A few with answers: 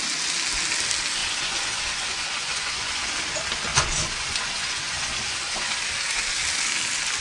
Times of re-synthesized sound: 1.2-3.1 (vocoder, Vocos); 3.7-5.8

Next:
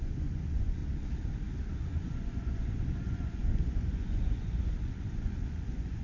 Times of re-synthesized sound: 0.0-0.8 (vocoder, Vocos); 1.7-6.0

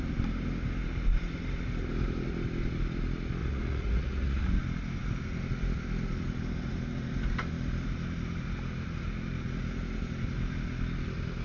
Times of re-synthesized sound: 3.4-4.6 (vocoder, Vocos)

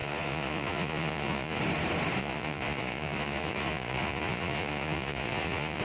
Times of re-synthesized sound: 0.0-1.6 (vocoder, Vocos); 2.2-5.8

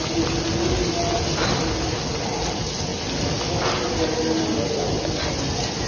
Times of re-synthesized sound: none

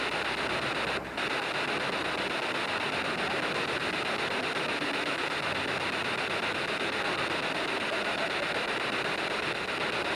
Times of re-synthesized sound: none

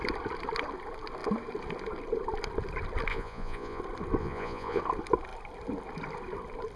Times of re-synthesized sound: 3.1-3.8 (vocoder, Vocos); 4.2-4.8

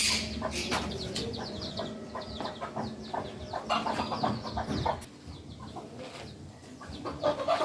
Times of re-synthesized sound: 0.9-1.9 (vocoder, Vocos); 6.5-7.6